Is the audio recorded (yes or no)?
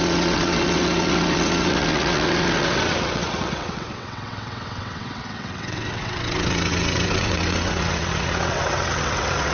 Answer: no